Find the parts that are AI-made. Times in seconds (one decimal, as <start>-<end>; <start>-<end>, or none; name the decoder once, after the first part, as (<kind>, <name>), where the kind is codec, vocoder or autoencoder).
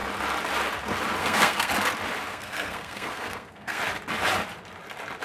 1.2-1.7 (codec, SNAC); 2.3-3.8